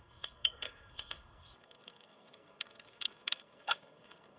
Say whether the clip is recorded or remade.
remade